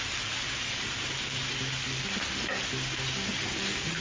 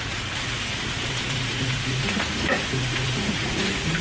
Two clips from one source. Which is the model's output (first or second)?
second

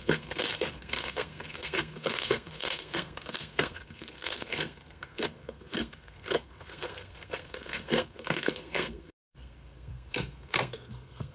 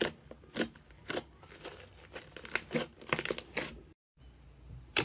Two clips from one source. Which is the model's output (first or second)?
first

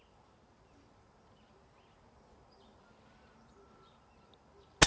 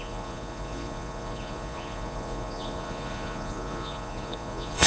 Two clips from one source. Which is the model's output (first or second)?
second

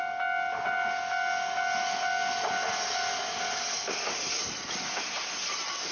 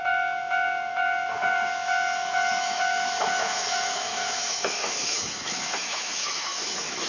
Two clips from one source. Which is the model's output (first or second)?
second